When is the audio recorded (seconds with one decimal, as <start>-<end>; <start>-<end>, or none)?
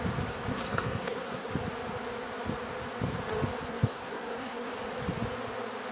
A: 0.0-0.5; 1.5-3.7; 4.7-5.9